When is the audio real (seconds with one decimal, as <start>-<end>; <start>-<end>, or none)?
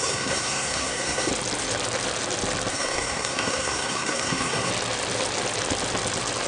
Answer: 1.3-2.7; 4.7-6.5